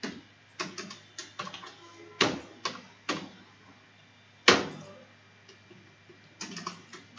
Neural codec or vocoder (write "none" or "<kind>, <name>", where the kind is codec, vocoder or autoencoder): none